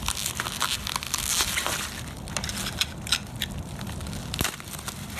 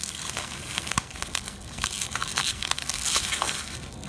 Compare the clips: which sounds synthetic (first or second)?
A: second